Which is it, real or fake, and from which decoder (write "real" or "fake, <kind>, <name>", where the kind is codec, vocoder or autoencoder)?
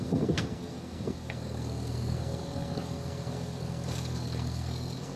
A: fake, codec, SNAC